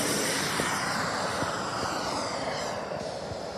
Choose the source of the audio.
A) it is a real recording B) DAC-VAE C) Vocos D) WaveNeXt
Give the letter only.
A